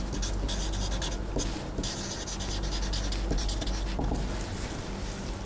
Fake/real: real